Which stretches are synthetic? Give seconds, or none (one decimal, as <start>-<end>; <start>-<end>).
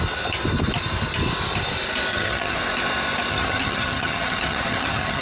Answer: 2.1-2.6; 3.3-5.2